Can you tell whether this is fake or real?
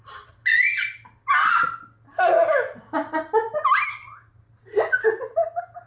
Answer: real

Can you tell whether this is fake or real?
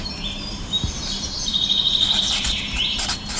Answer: fake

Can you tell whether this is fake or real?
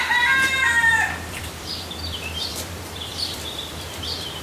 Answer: fake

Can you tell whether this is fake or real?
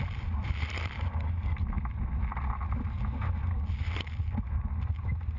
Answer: real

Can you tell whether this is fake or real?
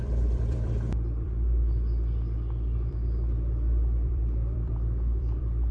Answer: fake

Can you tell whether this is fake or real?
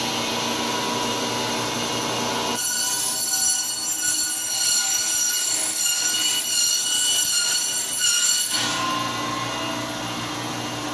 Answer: real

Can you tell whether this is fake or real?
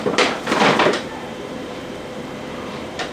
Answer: fake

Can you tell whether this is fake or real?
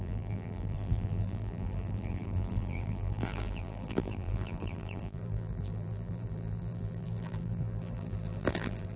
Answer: fake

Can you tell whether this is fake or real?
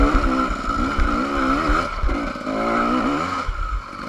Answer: real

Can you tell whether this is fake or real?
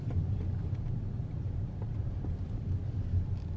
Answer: real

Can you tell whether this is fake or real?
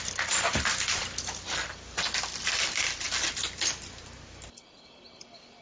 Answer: real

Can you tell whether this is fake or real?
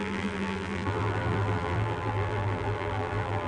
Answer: fake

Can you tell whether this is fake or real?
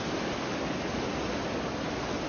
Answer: real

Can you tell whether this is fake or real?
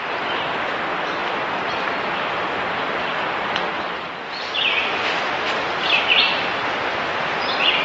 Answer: fake